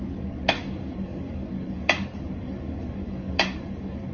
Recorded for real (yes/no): no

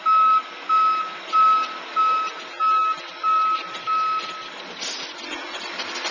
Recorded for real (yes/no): yes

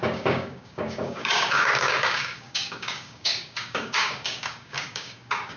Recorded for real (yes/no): no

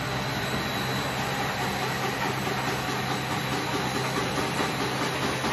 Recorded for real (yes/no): yes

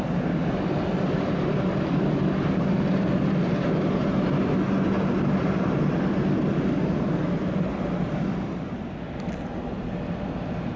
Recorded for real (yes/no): yes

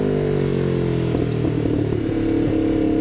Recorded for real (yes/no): yes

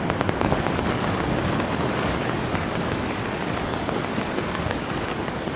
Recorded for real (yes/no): no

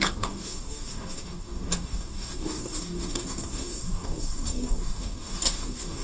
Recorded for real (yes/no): no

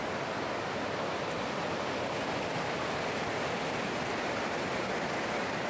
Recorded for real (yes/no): yes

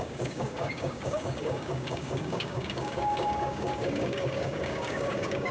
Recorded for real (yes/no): no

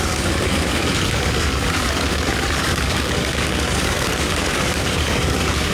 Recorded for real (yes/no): no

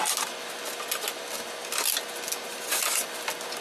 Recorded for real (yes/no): yes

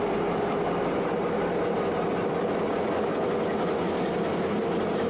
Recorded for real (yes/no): yes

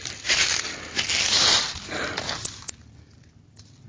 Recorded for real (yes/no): yes